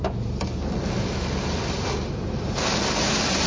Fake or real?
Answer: real